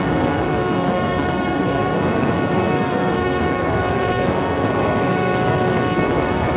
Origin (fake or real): fake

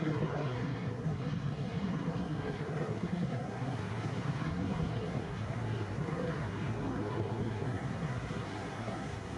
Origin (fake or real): fake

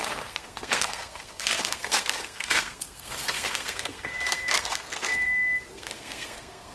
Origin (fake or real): fake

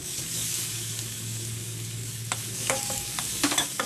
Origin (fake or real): fake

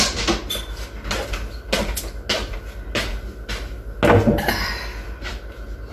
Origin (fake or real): real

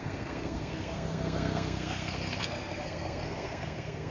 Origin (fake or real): fake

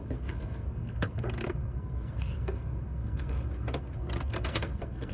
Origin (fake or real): fake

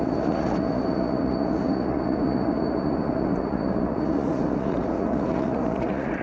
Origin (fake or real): fake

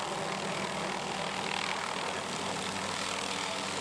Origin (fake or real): real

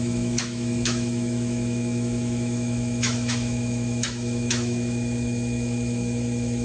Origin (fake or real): fake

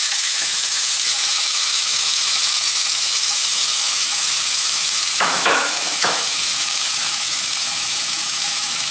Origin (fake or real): fake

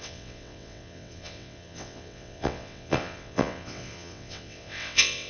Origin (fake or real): fake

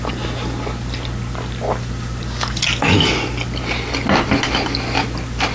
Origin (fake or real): real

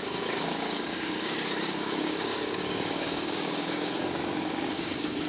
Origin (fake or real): fake